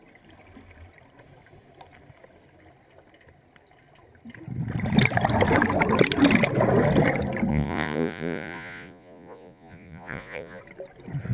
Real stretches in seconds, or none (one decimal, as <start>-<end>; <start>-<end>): 0.0-7.5; 10.6-11.3